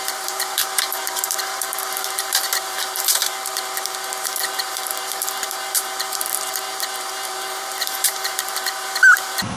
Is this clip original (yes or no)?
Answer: no